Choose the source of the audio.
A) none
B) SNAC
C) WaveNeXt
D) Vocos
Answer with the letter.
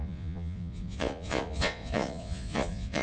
D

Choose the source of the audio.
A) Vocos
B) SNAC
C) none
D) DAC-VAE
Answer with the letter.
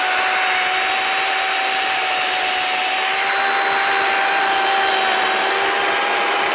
C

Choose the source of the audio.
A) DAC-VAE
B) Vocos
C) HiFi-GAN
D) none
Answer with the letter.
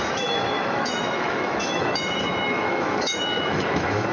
A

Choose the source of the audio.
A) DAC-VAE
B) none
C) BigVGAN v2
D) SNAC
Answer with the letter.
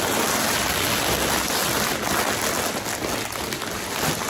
B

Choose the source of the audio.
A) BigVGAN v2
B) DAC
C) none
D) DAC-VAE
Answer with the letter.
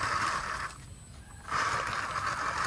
C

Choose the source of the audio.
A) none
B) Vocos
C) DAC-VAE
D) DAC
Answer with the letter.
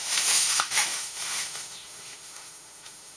C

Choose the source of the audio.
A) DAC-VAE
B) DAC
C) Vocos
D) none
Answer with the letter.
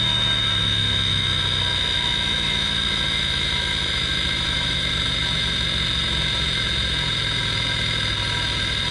A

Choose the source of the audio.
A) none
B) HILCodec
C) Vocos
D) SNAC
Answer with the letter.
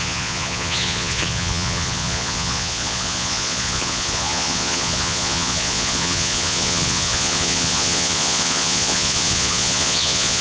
C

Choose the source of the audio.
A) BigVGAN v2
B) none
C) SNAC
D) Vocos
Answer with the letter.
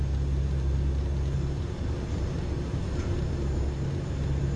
B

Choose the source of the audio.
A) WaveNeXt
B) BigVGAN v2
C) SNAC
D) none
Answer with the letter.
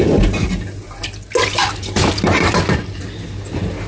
D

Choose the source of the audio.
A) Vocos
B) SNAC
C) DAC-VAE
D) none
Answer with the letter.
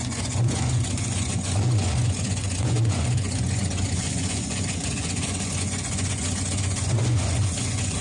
A